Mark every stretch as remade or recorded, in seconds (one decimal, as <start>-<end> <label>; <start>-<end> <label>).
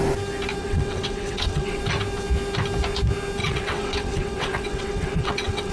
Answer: 0.0-0.6 recorded; 0.6-1.8 remade; 1.8-3.4 recorded; 3.4-5.7 remade